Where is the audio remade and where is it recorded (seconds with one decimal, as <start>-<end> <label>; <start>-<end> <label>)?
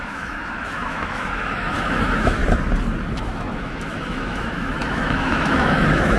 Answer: 0.0-2.4 remade; 2.4-3.2 recorded; 3.2-6.2 remade